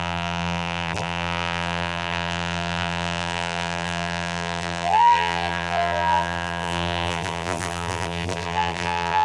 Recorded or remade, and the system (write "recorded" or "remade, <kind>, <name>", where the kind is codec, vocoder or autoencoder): remade, vocoder, BigVGAN v2